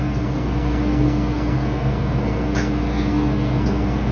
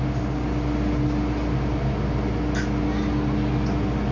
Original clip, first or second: second